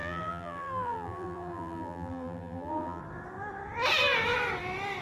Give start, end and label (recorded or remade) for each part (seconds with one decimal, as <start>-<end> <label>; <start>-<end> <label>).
0.0-3.0 remade; 3.0-5.0 recorded